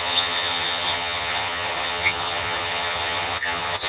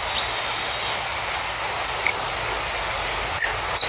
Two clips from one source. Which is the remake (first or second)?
first